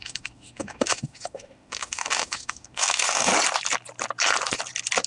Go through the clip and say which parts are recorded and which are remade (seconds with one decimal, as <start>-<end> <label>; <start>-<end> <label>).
0.0-3.3 remade; 3.3-5.1 recorded